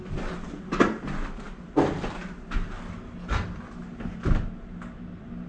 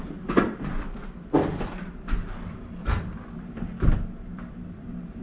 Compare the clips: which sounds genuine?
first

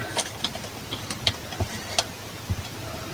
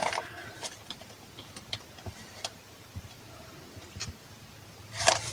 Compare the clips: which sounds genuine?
first